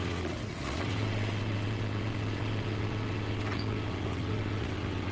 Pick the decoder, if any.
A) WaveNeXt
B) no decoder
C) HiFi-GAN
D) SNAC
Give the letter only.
A